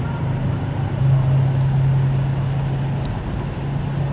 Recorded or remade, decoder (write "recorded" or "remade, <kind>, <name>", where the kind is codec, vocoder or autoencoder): recorded